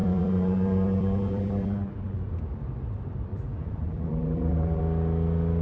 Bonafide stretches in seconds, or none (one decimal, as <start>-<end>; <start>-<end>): 2.3-3.3; 4.8-5.6